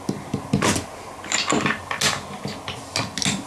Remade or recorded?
recorded